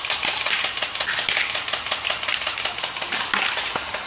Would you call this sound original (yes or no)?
yes